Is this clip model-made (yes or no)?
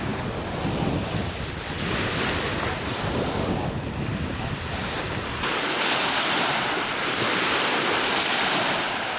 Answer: no